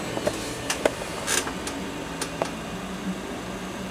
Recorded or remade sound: recorded